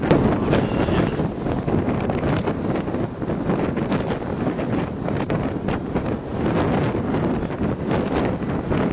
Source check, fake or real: real